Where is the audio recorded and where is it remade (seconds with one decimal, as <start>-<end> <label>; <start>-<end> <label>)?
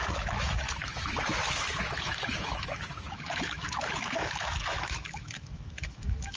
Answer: 0.0-6.4 remade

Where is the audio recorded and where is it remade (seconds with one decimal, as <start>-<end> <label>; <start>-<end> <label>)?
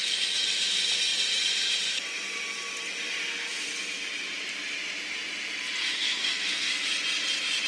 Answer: 0.0-5.8 recorded; 5.8-6.7 remade; 6.7-7.7 recorded